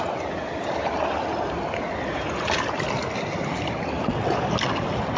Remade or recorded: recorded